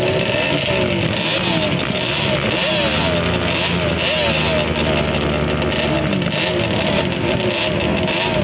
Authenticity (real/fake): real